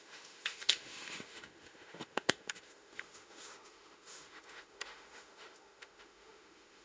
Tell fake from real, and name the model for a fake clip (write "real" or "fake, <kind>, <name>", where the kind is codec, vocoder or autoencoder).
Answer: fake, autoencoder, DAC-VAE